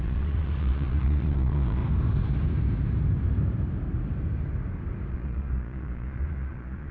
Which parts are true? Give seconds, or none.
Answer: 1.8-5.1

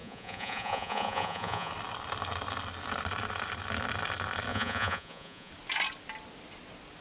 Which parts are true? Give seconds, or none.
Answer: 1.7-4.5; 5.5-7.0

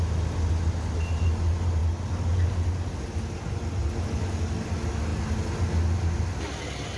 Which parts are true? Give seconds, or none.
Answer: 0.0-7.0

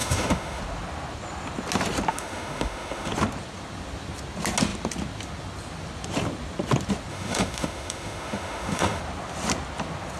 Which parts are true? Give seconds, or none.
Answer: 0.6-2.1; 3.1-7.1; 9.0-10.2

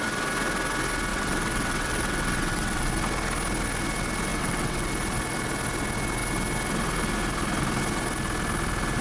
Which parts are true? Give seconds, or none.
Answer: 0.0-1.1; 2.9-4.3; 4.9-9.0

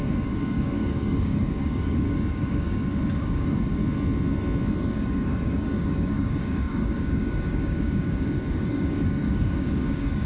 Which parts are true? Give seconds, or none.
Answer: 3.8-4.9